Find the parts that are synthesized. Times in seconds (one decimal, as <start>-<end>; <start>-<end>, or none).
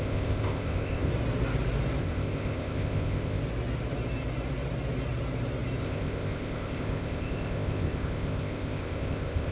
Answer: 0.0-1.1; 2.0-3.4; 5.8-9.5